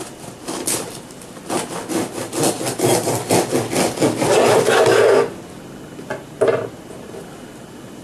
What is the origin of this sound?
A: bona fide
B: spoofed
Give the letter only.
A